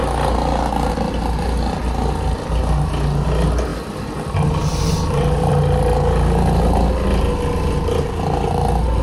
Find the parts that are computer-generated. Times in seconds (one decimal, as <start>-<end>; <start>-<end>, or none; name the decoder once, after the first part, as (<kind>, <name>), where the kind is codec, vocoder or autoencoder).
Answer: none